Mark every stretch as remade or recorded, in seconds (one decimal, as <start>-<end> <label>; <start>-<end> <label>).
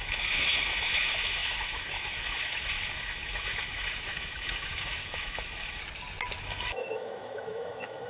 0.0-5.8 remade; 5.8-6.4 recorded; 6.4-8.1 remade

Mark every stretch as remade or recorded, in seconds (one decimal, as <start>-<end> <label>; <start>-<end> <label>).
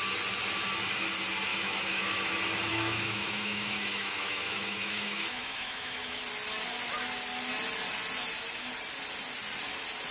0.0-1.5 recorded; 1.5-2.3 remade; 2.3-2.7 recorded; 2.7-6.2 remade; 6.2-10.1 recorded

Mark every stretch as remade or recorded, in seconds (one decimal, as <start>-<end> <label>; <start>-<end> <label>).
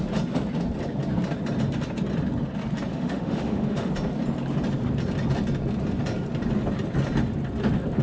0.0-2.9 recorded; 2.9-3.9 remade; 3.9-8.0 recorded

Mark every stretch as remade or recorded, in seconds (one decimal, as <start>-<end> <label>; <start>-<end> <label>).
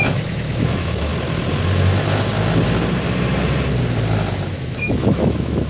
0.0-1.1 remade; 1.1-4.5 recorded; 4.5-5.7 remade